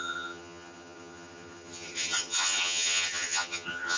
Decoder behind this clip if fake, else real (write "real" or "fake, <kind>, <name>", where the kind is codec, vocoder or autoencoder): fake, vocoder, HiFi-GAN